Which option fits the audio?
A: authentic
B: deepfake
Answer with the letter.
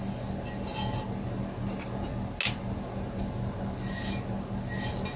A